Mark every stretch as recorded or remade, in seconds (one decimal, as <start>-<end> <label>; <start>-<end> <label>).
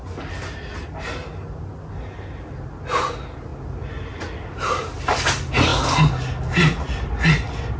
0.0-7.8 recorded